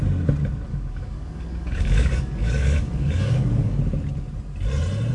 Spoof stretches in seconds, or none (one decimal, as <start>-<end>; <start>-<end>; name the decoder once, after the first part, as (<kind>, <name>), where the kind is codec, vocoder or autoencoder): 0.7-3.8 (codec, DAC)